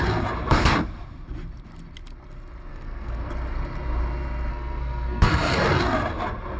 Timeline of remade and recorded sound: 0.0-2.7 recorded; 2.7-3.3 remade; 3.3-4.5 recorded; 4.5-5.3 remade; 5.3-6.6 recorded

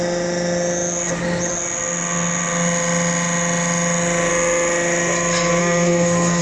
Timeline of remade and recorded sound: 0.0-5.6 recorded; 5.6-6.4 remade

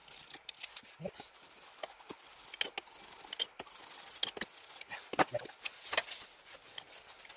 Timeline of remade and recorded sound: 0.0-7.4 recorded

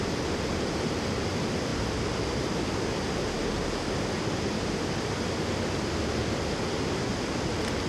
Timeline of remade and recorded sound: 0.0-7.9 recorded

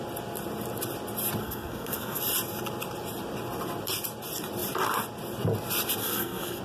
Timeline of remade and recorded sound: 0.0-1.4 recorded; 1.4-2.2 remade; 2.2-6.0 recorded; 6.0-6.6 remade

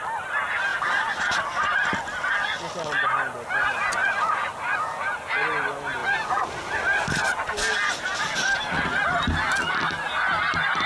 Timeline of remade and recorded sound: 0.0-10.9 recorded

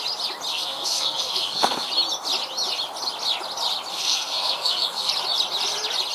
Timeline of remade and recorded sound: 0.0-0.5 recorded; 0.5-1.9 remade; 1.9-3.9 recorded; 3.9-5.1 remade; 5.1-6.1 recorded